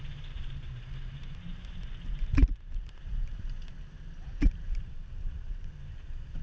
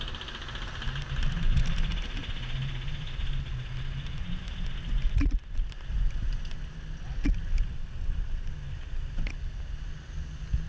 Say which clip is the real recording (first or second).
second